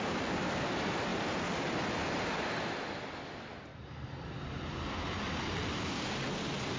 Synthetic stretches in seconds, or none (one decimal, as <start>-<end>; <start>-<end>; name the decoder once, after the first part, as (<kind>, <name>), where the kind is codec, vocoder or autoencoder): 0.0-1.1 (vocoder, BigVGAN v2); 3.2-3.7; 5.8-6.8

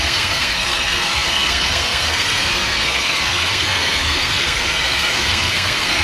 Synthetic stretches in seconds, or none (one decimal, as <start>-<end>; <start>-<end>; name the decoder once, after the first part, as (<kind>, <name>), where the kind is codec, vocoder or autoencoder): 0.0-6.0 (codec, SNAC)

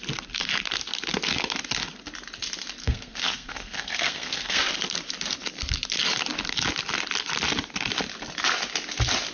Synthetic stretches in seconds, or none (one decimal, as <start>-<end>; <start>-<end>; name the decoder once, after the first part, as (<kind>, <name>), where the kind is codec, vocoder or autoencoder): 2.8-4.6 (codec, SNAC)

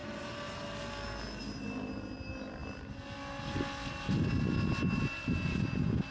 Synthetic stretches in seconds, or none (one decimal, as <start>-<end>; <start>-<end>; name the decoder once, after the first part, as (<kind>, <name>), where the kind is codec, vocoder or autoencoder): none

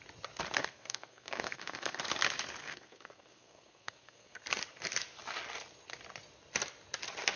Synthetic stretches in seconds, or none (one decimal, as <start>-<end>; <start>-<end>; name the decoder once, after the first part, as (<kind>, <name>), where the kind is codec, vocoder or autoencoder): 0.6-2.0 (codec, SNAC); 2.6-4.4